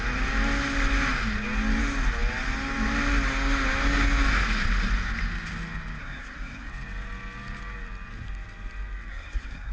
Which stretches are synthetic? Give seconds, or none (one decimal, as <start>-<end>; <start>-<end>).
6.0-6.7; 9.1-9.7